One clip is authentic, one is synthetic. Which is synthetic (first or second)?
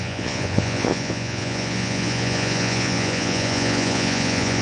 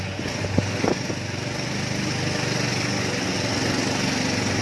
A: first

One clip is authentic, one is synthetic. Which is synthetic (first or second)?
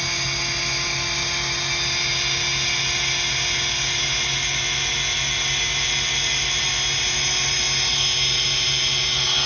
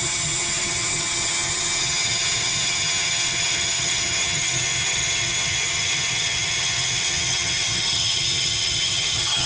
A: second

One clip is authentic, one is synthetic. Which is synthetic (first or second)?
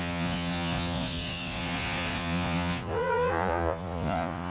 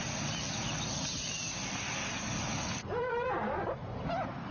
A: first